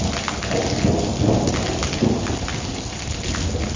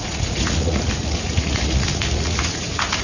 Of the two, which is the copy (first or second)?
second